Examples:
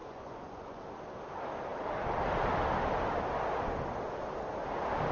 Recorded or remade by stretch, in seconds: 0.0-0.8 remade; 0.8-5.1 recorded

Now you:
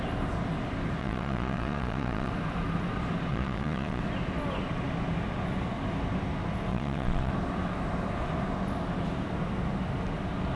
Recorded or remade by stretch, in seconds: 0.0-1.0 recorded; 1.0-2.3 remade; 2.3-3.3 recorded; 3.3-4.0 remade; 4.0-6.7 recorded; 6.7-7.3 remade; 7.3-10.6 recorded

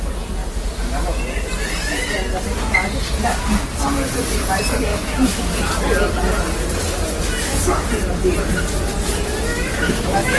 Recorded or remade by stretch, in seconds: 0.0-4.9 recorded; 4.9-5.4 remade; 5.4-9.5 recorded; 9.5-10.4 remade

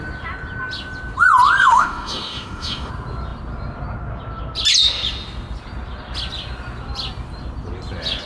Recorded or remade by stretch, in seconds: 0.0-1.6 recorded; 1.6-2.9 remade; 2.9-8.3 recorded

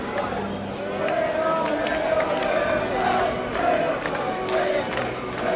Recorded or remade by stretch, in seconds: 0.0-5.6 recorded